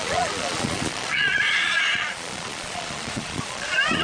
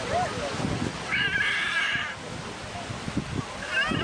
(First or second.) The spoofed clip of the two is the first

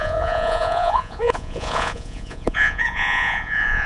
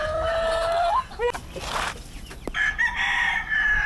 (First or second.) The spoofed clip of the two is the first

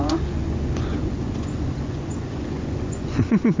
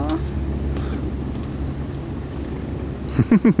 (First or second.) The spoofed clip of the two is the first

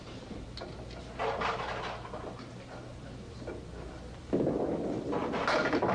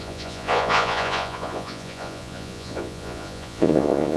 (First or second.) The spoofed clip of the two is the second